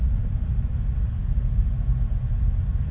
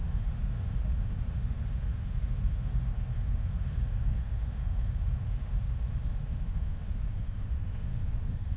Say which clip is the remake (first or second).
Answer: second